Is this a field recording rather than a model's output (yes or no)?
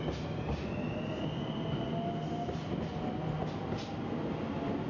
yes